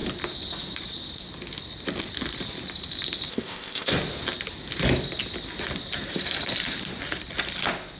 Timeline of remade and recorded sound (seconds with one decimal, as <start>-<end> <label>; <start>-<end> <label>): 0.0-3.3 recorded; 3.3-3.9 remade; 3.9-8.0 recorded